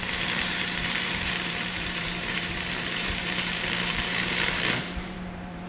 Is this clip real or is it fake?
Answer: fake